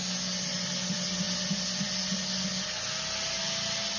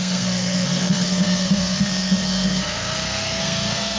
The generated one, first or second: second